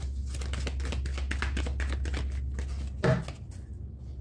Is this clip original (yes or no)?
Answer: yes